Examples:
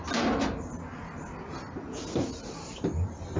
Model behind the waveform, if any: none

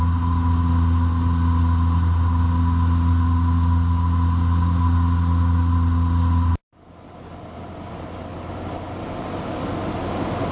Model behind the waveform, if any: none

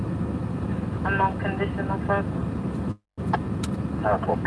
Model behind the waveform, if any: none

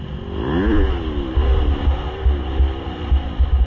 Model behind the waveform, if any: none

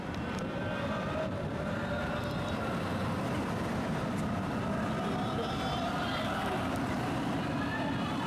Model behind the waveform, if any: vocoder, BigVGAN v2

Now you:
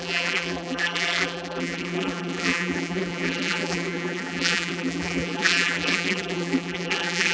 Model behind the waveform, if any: vocoder, BigVGAN v2